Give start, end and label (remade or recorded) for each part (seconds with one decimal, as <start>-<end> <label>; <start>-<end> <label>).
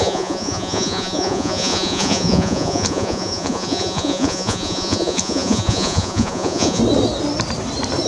0.0-6.8 remade; 6.8-8.1 recorded